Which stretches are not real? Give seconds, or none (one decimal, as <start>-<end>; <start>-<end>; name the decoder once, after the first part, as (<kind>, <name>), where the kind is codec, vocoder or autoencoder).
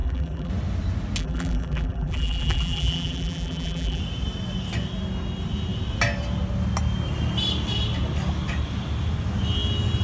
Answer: 0.0-0.5 (vocoder, BigVGAN v2); 1.2-4.0